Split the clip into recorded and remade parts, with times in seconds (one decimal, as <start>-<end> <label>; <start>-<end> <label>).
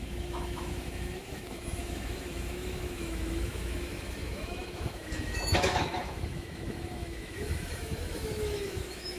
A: 0.0-9.2 remade